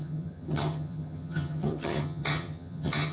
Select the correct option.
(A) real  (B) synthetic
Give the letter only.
B